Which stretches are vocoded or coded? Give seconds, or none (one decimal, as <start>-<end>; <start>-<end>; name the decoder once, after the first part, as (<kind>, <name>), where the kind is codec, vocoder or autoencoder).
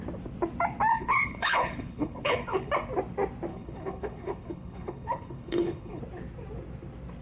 0.9-2.7 (codec, HILCodec); 3.5-6.0